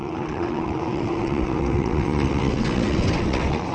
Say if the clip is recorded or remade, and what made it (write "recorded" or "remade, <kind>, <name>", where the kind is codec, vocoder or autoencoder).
remade, vocoder, WaveNeXt